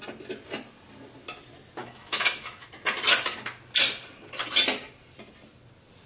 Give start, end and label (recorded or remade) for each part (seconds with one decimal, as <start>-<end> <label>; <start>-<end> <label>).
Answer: 0.0-1.8 recorded; 1.8-2.7 remade; 2.7-6.1 recorded

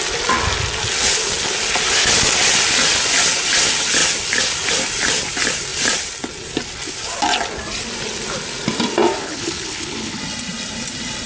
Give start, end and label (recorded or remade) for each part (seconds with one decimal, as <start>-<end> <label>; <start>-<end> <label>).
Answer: 0.0-9.2 recorded; 9.2-10.2 remade; 10.2-11.3 recorded

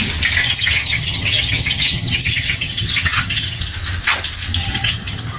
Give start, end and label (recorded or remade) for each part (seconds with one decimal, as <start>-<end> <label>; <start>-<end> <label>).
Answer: 0.0-0.4 recorded; 0.4-3.6 remade; 3.6-4.6 recorded; 4.6-5.4 remade

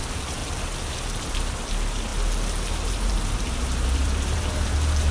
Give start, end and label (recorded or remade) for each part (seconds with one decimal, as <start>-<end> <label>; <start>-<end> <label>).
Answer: 0.0-0.4 remade; 0.4-1.3 recorded; 1.3-2.1 remade; 2.1-2.9 recorded; 2.9-5.1 remade